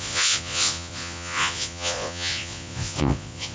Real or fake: fake